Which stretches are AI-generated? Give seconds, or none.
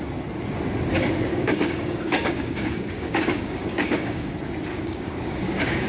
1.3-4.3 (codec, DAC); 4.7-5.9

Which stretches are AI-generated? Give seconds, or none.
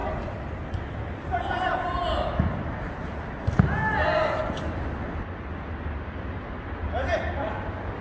none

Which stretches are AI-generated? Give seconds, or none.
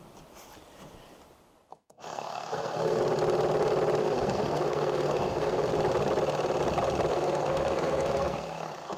1.7-3.0 (codec, SNAC); 4.0-5.7; 7.1-9.0